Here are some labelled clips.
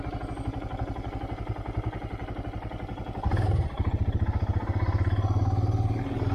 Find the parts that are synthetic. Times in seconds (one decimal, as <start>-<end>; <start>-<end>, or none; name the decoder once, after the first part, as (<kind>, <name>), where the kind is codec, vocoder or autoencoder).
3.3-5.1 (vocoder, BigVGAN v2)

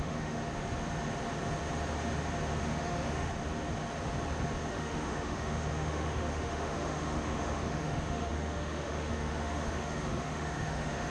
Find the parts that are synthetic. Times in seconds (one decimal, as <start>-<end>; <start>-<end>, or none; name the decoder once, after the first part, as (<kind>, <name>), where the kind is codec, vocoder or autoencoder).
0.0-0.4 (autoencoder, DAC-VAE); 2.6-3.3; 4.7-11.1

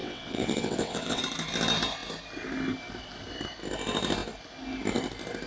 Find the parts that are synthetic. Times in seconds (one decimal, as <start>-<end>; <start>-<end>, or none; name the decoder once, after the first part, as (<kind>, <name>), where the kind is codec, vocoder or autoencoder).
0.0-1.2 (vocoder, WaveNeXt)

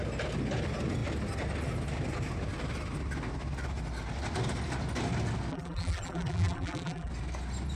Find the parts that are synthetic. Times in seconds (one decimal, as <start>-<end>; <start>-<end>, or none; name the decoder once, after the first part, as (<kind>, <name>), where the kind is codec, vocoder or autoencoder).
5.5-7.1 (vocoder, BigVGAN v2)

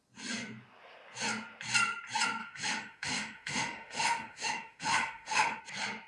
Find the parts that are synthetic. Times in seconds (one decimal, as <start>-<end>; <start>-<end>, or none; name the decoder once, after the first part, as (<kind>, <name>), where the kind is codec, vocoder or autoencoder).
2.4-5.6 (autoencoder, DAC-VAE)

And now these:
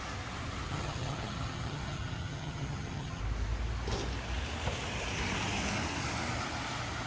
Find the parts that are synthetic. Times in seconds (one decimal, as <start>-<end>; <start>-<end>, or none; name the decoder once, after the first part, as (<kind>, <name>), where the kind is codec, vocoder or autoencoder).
0.7-3.2 (vocoder, HiFi-GAN)